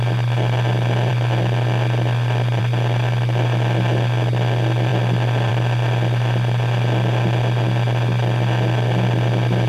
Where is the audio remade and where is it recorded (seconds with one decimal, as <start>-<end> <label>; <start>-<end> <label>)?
0.0-9.7 recorded